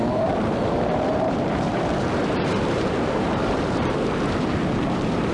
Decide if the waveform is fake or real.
fake